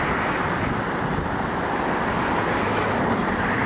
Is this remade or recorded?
recorded